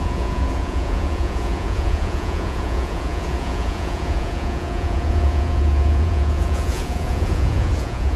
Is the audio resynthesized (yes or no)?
yes